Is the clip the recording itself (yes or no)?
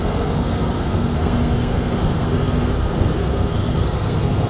no